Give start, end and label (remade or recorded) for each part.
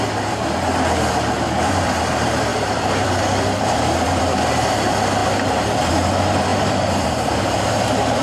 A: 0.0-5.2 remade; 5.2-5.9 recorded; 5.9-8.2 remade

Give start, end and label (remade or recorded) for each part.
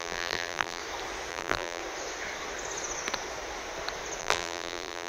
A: 0.0-0.8 remade; 0.8-1.3 recorded; 1.3-1.8 remade; 1.8-4.2 recorded; 4.2-5.1 remade